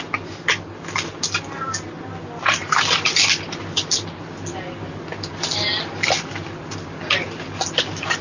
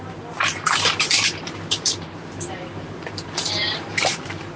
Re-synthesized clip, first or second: second